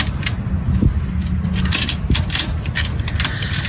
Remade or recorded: remade